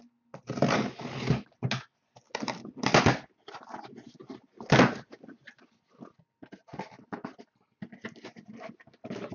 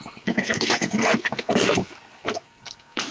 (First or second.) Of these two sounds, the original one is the first